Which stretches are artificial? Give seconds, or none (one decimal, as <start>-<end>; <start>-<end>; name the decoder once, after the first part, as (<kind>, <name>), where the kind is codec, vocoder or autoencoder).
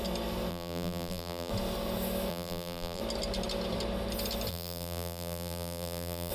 0.5-1.5 (vocoder, BigVGAN v2); 2.3-3.0; 4.5-6.3